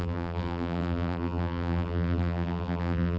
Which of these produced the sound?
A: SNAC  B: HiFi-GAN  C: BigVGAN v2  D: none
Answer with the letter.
C